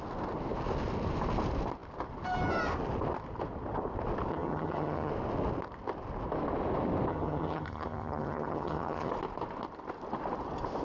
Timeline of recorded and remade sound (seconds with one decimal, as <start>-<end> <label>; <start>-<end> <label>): 0.0-4.3 recorded; 4.3-5.1 remade; 5.1-7.1 recorded; 7.1-9.1 remade; 9.1-10.8 recorded